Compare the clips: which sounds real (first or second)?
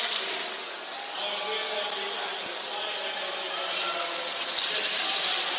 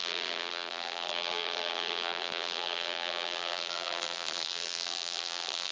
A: first